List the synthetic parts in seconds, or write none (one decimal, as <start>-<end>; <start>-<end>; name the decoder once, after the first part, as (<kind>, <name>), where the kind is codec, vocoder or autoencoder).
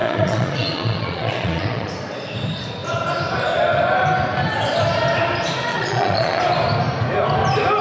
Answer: 0.0-1.9 (vocoder, Vocos); 5.7-6.4